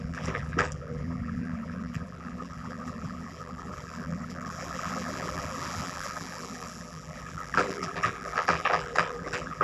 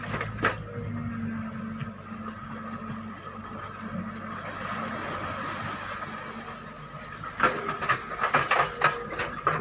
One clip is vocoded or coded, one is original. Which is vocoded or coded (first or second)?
first